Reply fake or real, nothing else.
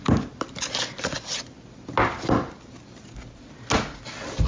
real